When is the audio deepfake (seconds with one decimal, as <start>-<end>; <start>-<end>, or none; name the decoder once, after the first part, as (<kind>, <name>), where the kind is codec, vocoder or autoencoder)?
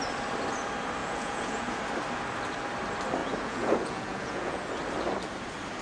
1.0-1.8 (vocoder, Vocos); 3.2-4.6